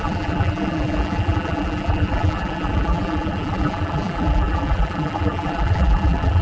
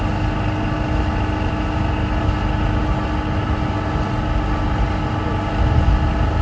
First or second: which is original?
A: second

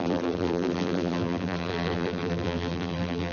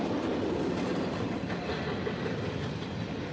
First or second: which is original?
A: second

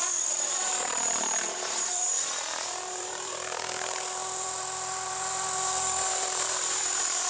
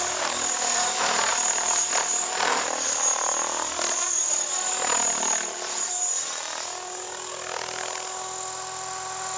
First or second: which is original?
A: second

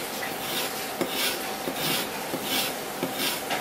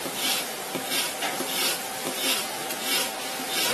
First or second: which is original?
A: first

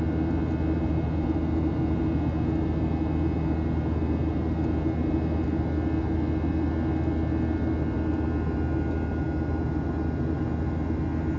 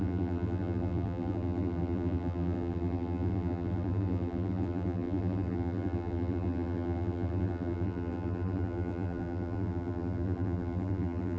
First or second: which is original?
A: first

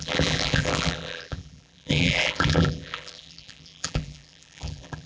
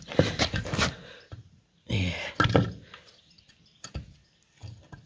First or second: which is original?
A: second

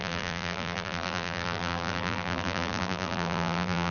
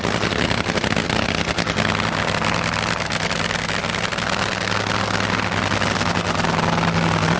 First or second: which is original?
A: second